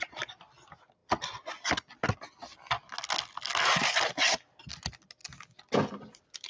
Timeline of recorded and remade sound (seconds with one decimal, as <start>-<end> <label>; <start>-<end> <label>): 0.0-6.5 recorded

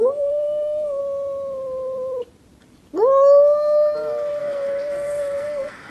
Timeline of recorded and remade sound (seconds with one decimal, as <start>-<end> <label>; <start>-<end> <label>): 0.0-1.0 remade; 1.0-4.4 recorded; 4.4-5.9 remade

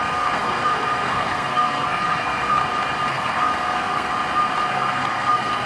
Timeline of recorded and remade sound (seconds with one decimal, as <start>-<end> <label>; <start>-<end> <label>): 0.0-2.6 remade; 2.6-3.1 recorded; 3.1-4.1 remade; 4.1-4.7 recorded; 4.7-5.7 remade

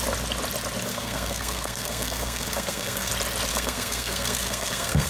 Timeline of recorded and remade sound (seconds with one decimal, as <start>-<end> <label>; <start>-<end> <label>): 0.0-0.9 recorded; 0.9-3.1 remade; 3.1-3.5 recorded; 3.5-5.1 remade